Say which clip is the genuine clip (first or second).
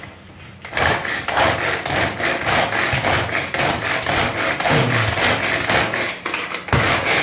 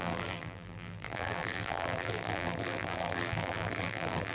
first